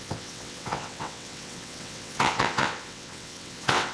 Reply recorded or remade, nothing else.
remade